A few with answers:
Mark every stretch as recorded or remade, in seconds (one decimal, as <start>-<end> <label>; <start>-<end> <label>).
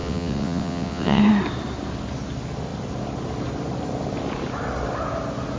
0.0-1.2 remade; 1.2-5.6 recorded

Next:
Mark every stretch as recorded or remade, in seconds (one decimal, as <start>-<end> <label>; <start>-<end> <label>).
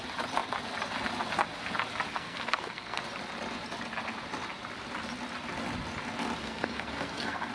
0.0-2.1 recorded; 2.1-3.0 remade; 3.0-6.4 recorded; 6.4-7.5 remade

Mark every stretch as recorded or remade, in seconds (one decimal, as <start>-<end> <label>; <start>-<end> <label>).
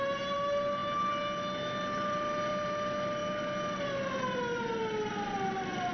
0.0-5.9 recorded